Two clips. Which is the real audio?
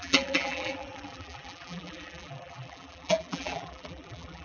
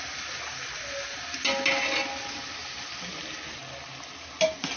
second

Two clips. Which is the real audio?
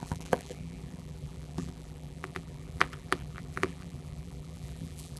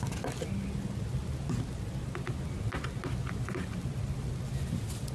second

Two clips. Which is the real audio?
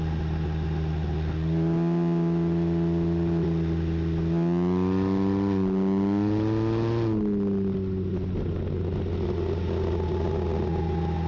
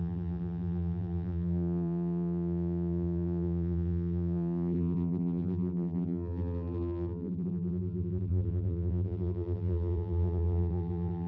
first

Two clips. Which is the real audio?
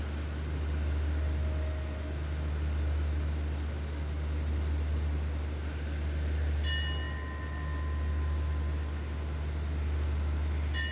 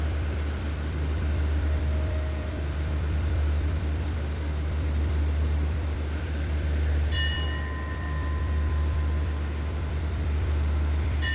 first